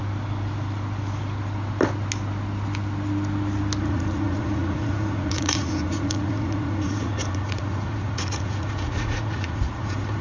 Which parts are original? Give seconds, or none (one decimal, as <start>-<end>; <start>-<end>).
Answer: 0.0-3.8